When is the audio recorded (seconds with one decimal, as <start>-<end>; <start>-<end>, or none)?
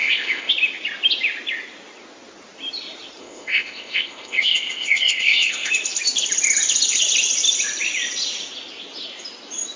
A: 0.5-3.2; 5.7-9.8